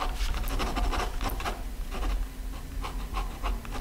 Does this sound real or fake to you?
real